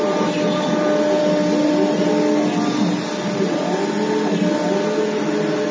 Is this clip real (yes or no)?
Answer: yes